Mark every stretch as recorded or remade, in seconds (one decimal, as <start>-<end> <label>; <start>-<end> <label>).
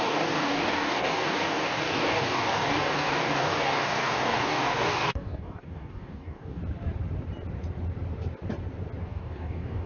0.0-6.6 remade; 6.6-9.0 recorded; 9.0-9.9 remade